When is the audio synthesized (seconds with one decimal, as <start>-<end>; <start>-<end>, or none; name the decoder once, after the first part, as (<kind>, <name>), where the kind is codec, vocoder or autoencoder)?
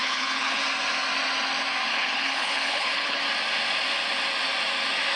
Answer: 0.0-0.6 (codec, HILCodec); 1.9-3.2